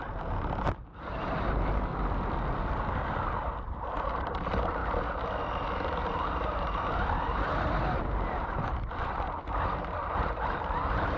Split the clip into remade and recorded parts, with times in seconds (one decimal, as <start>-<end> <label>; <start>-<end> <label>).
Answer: 0.0-1.9 remade; 1.9-3.4 recorded; 3.4-4.8 remade; 4.8-5.7 recorded; 5.7-11.2 remade